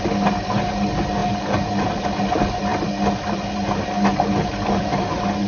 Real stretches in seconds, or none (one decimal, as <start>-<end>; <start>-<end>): 0.0-5.5